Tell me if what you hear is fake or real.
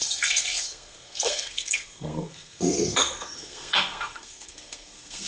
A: fake